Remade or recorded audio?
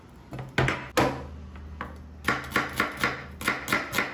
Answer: recorded